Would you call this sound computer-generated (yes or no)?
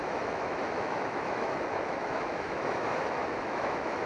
yes